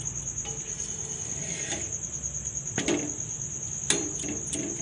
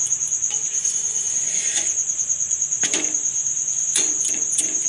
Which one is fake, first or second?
second